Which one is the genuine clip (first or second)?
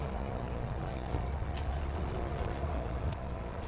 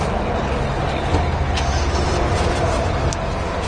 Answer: second